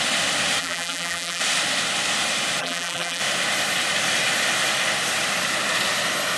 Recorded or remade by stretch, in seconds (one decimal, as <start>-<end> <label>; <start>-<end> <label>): 0.0-0.6 recorded; 0.6-1.4 remade; 1.4-2.6 recorded; 2.6-3.2 remade; 3.2-6.4 recorded